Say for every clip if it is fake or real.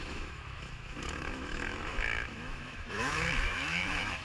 fake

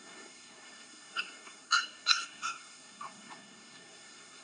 fake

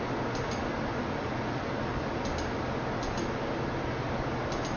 real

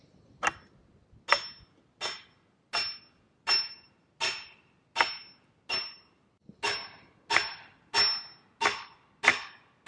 real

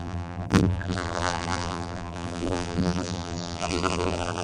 fake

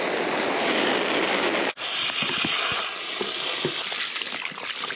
real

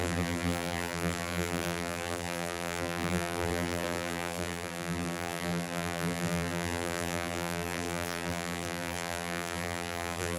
fake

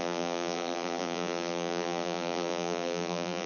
fake